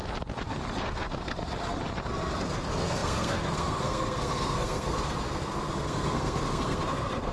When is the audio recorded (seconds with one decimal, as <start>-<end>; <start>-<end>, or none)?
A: 0.0-0.8; 1.4-2.4